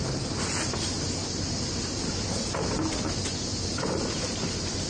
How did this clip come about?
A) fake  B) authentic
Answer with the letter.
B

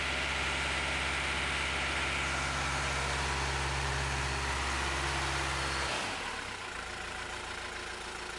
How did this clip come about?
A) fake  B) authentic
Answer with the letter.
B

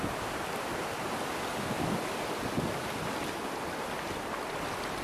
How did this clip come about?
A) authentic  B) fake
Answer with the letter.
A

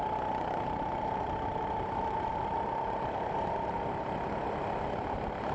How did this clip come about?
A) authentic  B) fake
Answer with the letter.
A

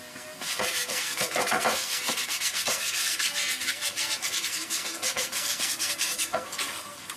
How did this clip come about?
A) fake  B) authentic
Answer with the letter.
A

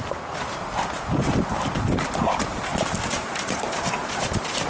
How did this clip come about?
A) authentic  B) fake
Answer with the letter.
A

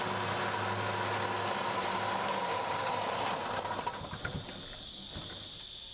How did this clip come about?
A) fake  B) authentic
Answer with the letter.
B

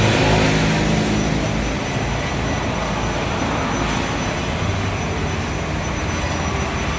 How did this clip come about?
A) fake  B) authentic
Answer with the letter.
B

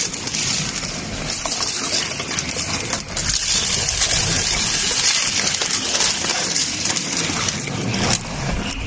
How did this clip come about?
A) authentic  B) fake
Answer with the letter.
A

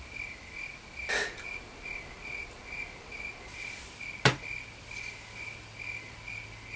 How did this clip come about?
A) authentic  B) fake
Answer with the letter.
A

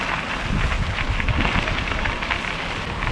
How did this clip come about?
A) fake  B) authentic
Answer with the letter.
B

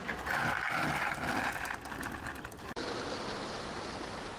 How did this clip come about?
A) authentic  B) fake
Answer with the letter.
A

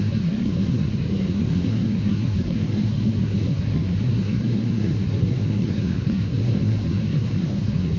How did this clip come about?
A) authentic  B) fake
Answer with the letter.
B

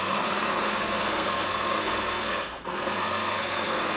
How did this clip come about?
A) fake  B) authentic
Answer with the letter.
A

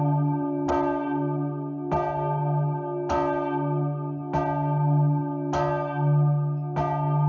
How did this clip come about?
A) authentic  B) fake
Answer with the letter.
A